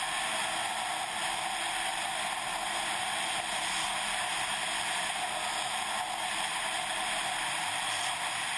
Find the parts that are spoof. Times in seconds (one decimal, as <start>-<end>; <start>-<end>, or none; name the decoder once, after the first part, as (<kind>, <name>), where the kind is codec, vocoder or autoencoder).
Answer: none